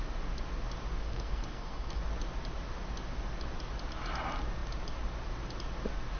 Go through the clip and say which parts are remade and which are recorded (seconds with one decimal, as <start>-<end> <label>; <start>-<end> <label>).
0.0-1.0 recorded; 1.0-2.0 remade; 2.0-6.2 recorded

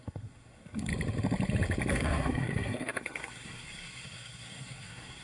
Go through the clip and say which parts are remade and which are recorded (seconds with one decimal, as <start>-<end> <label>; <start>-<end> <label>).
0.0-0.9 remade; 0.9-1.9 recorded; 1.9-5.2 remade

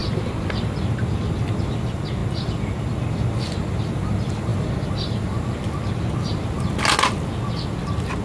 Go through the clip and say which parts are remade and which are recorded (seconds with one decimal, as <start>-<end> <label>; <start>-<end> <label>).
0.0-8.2 recorded

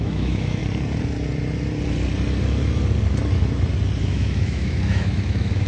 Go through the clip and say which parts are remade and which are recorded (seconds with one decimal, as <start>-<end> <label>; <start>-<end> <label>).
0.0-0.6 remade; 0.6-4.0 recorded; 4.0-5.7 remade

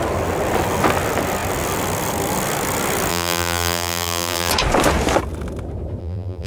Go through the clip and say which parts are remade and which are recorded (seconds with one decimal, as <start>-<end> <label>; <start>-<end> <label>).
0.0-3.1 recorded; 3.1-4.5 remade; 4.5-6.0 recorded; 6.0-6.5 remade

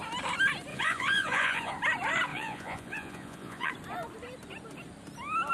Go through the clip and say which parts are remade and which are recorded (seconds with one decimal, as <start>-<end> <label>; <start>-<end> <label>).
0.0-0.7 recorded; 0.7-1.7 remade; 1.7-2.3 recorded; 2.3-3.7 remade; 3.7-5.5 recorded

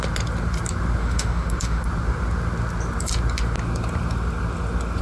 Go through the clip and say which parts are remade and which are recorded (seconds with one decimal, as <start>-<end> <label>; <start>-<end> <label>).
0.0-1.0 recorded; 1.0-1.8 remade; 1.8-5.0 recorded

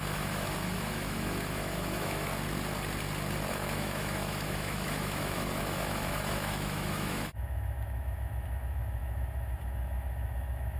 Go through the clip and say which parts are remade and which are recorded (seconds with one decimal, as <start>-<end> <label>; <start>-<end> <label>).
0.0-2.3 remade; 2.3-3.5 recorded; 3.5-10.8 remade